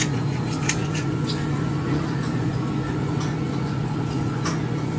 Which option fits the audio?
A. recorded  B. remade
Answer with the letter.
B